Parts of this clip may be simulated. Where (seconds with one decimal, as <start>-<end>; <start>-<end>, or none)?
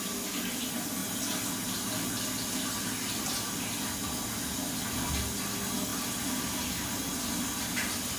none